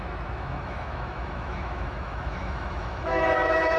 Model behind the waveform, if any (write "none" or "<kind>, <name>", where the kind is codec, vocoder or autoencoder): autoencoder, DAC-VAE